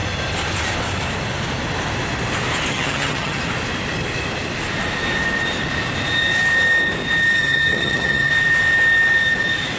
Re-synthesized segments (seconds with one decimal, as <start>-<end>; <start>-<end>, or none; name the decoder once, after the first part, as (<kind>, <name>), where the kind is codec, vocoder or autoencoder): 2.7-3.4 (vocoder, HiFi-GAN); 7.4-8.3